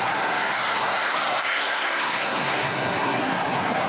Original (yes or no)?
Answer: no